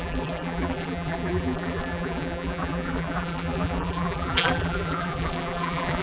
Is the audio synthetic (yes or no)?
yes